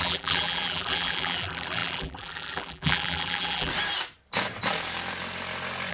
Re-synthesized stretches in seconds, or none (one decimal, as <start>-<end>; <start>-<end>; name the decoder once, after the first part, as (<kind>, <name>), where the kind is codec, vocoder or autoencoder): 0.0-3.7 (vocoder, BigVGAN v2)

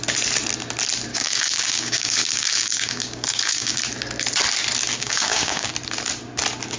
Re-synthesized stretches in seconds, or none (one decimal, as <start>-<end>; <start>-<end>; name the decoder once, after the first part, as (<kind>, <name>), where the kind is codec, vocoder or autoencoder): 1.1-3.8 (codec, DAC); 4.9-5.7

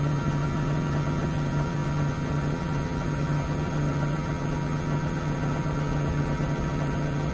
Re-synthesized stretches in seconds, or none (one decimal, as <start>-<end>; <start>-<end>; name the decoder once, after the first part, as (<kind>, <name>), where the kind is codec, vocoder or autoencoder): 0.0-7.3 (vocoder, HiFi-GAN)

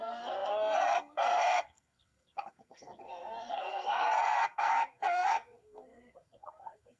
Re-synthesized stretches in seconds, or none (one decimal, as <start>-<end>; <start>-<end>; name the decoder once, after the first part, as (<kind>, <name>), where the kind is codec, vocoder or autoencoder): 0.0-7.0 (codec, SNAC)

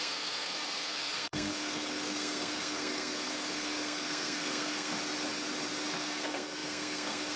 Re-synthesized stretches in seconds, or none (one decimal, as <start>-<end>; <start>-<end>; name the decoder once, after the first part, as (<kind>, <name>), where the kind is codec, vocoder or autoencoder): 0.0-4.9 (codec, SNAC); 5.9-7.4